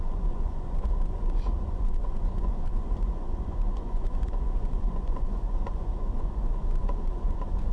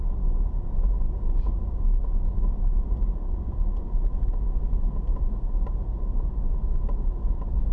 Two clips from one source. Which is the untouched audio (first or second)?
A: second